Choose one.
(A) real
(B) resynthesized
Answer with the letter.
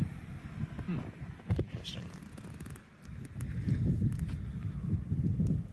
A